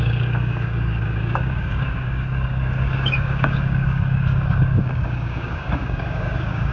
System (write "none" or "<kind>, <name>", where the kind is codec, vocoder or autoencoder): codec, DAC